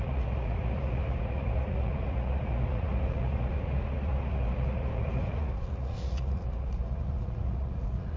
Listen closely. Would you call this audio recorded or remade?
remade